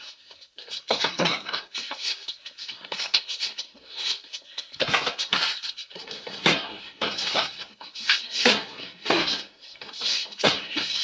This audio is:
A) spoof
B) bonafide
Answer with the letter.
A